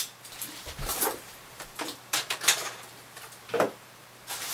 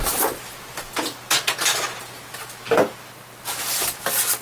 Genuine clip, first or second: second